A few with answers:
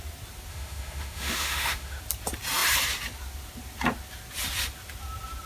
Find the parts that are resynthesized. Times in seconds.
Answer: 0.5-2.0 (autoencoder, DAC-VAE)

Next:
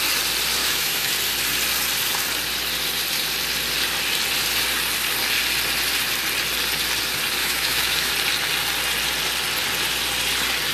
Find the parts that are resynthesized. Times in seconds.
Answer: 0.6-1.1 (autoencoder, DAC-VAE); 7.4-8.1

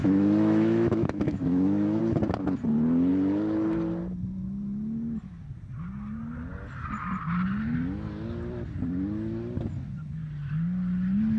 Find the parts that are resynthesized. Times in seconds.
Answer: 0.0-2.0 (autoencoder, DAC-VAE)

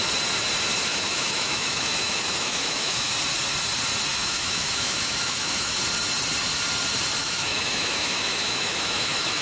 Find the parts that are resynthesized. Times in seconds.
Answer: 0.9-3.1 (autoencoder, DAC-VAE); 4.1-5.8; 7.2-9.4

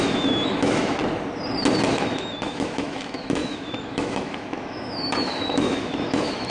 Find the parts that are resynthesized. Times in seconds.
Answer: 0.0-1.0 (autoencoder, DAC-VAE); 1.9-6.5

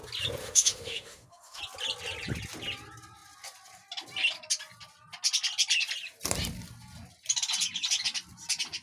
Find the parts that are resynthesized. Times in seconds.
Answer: 0.4-1.6 (autoencoder, DAC-VAE)

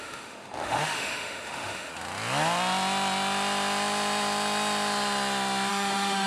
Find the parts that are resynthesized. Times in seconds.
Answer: 0.0-1.9 (autoencoder, DAC-VAE); 5.7-6.3